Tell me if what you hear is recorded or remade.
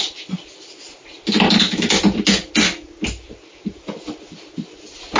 recorded